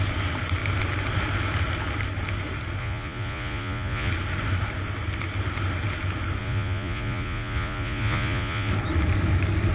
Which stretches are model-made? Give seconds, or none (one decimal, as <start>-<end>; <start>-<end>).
2.8-4.1; 6.4-8.7